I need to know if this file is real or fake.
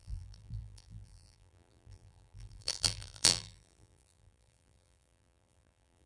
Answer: fake